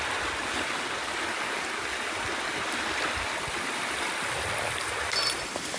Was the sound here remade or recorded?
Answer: recorded